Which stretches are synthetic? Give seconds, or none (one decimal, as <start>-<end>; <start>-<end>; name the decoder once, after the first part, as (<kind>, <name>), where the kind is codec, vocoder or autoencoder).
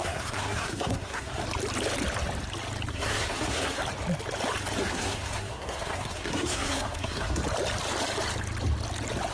0.0-1.4 (codec, SNAC); 2.9-3.8; 4.8-7.4